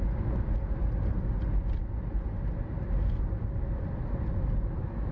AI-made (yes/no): no